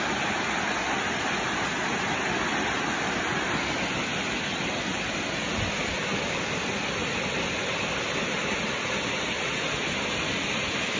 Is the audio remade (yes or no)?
no